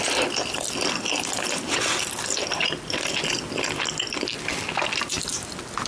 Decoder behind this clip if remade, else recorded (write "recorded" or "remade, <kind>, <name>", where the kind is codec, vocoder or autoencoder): recorded